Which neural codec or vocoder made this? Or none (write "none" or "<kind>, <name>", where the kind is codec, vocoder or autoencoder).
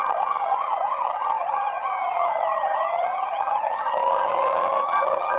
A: vocoder, HiFi-GAN